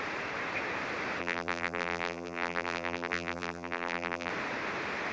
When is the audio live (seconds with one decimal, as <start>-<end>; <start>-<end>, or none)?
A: 0.0-1.2; 4.3-5.1